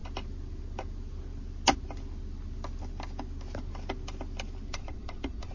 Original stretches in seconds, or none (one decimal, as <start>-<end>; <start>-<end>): 0.0-4.7

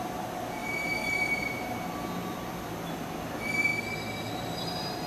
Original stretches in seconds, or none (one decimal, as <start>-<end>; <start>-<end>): 0.0-5.1

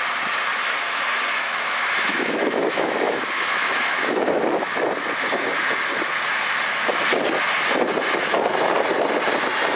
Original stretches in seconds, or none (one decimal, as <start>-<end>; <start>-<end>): 0.0-0.5; 4.7-9.8

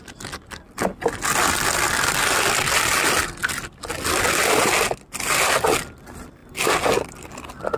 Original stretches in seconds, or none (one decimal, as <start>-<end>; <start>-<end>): 0.0-3.4; 3.9-7.8

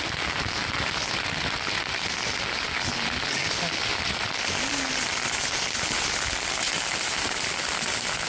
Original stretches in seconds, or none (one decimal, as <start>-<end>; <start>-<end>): 0.0-8.3